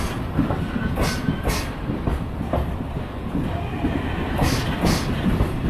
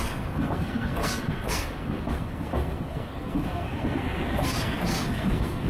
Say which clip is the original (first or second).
first